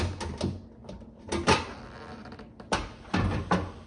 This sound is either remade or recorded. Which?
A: recorded